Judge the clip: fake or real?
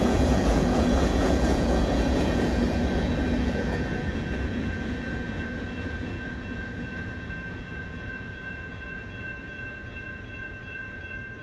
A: fake